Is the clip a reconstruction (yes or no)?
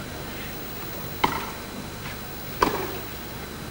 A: no